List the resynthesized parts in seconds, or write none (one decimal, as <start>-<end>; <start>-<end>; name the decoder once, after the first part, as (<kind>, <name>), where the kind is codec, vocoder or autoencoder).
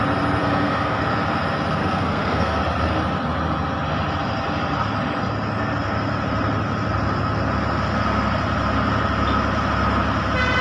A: 0.4-1.0 (codec, SNAC); 1.8-2.6